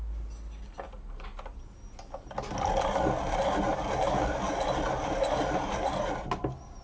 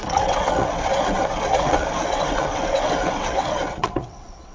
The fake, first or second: second